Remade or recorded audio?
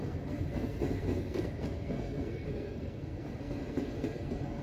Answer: remade